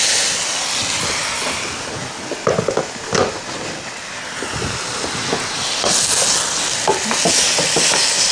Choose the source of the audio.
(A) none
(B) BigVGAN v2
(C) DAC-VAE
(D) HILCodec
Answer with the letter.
A